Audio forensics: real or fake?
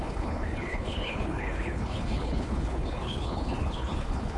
fake